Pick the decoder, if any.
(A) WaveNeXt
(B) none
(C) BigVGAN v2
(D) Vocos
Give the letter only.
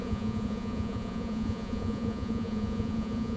D